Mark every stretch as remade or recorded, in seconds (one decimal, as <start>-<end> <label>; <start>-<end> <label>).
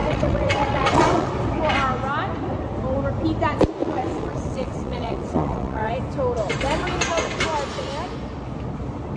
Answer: 0.0-1.3 remade; 1.3-3.8 recorded; 3.8-5.9 remade; 5.9-9.2 recorded